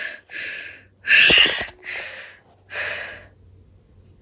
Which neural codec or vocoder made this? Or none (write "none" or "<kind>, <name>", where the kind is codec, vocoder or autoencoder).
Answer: none